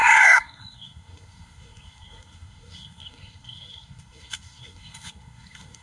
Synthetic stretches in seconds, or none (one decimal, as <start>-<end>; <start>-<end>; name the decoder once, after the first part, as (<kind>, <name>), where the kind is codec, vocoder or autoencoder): 0.0-5.8 (codec, SNAC)